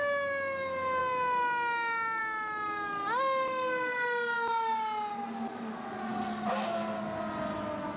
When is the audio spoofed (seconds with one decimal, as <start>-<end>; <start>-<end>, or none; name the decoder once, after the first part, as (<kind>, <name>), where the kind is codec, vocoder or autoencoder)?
none